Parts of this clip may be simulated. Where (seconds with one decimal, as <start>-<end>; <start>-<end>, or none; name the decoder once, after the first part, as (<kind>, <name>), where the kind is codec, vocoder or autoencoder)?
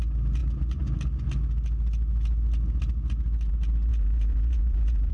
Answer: 3.9-5.1 (vocoder, Vocos)